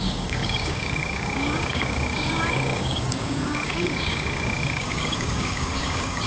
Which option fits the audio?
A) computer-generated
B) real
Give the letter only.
A